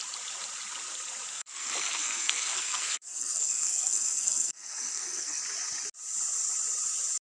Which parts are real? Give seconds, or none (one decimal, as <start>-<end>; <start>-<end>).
0.0-1.3; 5.4-7.2